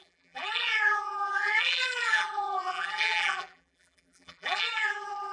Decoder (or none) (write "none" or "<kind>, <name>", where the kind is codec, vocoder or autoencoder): vocoder, BigVGAN v2